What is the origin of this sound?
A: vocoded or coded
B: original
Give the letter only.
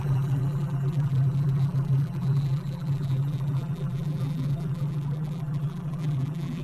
A